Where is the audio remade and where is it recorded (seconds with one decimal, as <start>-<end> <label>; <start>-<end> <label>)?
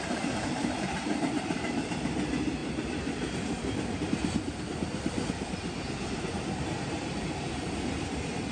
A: 0.0-2.6 remade; 2.6-6.6 recorded; 6.6-8.5 remade